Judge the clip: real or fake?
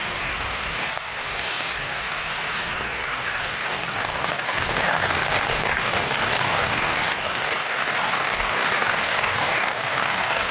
fake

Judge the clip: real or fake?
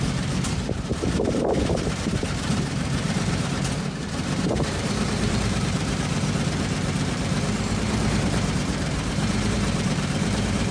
fake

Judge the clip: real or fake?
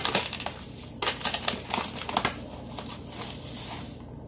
real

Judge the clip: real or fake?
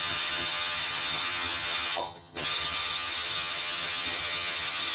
fake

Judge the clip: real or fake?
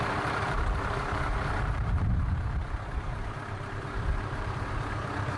fake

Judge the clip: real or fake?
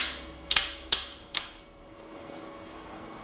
fake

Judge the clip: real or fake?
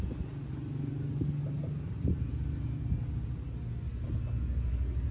real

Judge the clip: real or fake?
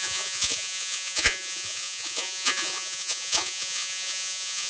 fake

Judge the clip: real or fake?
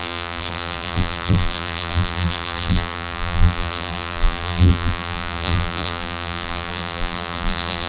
fake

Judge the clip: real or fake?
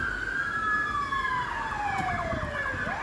real